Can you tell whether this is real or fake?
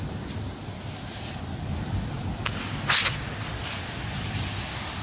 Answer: real